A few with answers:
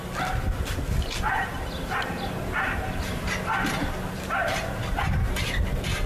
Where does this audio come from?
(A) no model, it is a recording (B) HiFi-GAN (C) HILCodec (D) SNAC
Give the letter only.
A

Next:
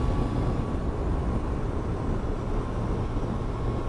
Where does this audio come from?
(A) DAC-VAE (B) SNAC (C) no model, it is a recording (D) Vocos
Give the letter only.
C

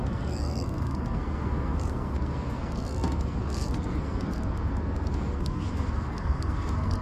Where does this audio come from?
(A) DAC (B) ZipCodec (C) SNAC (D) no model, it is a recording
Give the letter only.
C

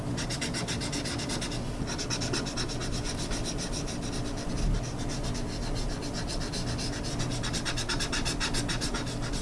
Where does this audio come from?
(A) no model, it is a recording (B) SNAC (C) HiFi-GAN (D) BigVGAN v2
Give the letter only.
A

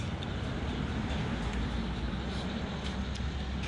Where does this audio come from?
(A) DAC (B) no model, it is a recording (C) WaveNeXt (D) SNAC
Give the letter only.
B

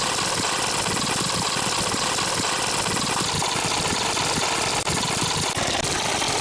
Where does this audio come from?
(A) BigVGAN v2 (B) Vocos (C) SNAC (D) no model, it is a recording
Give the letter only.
D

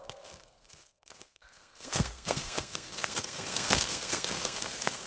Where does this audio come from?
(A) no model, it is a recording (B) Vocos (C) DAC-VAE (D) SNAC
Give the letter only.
D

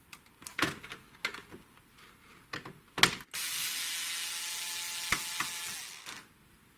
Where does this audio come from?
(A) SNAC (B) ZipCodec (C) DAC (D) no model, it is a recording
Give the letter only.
D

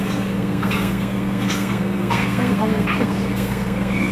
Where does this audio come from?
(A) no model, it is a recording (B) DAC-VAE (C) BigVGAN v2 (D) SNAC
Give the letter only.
D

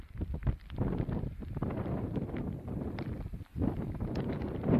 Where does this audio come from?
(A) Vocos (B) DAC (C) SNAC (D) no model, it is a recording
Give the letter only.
D